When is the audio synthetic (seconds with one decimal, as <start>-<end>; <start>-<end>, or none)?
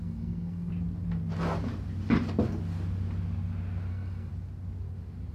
0.0-0.7; 3.9-4.3